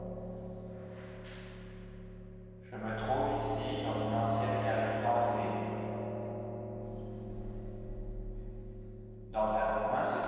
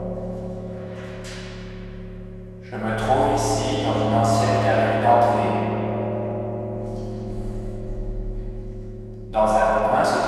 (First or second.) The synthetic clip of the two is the second